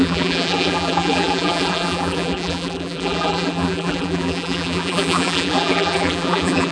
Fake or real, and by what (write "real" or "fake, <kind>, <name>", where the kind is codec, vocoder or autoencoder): fake, vocoder, BigVGAN v2